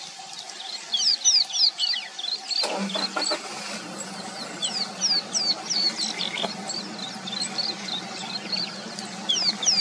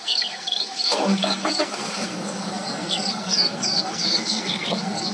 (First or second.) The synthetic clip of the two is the second